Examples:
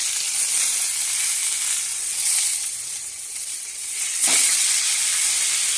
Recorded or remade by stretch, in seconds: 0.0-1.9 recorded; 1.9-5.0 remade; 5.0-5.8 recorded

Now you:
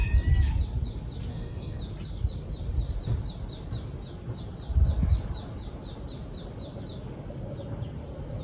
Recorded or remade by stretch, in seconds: 0.0-1.3 recorded; 1.3-1.8 remade; 1.8-8.4 recorded

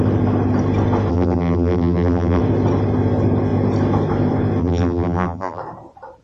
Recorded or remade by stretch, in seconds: 0.0-1.1 recorded; 1.1-2.4 remade; 2.4-4.6 recorded; 4.6-5.6 remade; 5.6-6.2 recorded